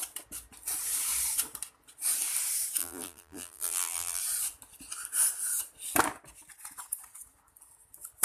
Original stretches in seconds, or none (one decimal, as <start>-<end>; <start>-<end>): 0.0-2.8; 4.2-8.2

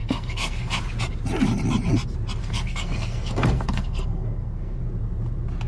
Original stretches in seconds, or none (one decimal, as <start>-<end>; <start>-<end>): 0.8-2.4; 4.8-5.7

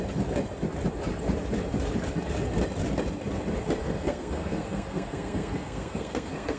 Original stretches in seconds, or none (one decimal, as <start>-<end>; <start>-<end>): 0.0-3.8

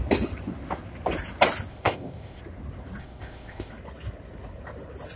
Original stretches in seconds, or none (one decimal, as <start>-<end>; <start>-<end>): 0.0-1.7; 2.4-3.0; 3.7-5.2

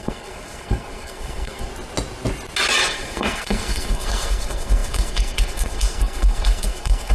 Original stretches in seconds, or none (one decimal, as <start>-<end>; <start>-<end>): 1.7-2.8

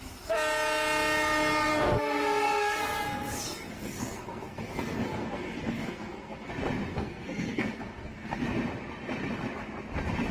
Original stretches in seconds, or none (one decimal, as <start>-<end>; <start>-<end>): 0.0-1.7; 6.5-6.9; 8.4-10.3

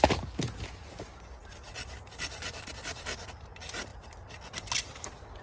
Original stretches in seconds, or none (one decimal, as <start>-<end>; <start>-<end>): 0.0-1.4; 2.7-5.4

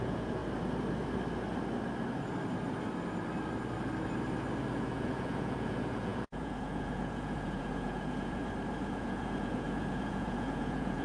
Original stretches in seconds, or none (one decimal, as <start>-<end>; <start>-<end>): 0.4-4.7; 8.4-8.9